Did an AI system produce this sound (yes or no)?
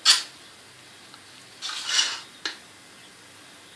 no